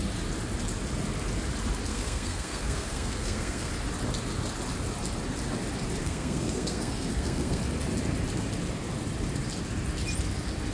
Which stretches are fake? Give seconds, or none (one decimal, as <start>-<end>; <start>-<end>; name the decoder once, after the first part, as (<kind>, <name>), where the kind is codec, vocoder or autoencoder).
1.9-3.7 (codec, SNAC); 6.0-7.6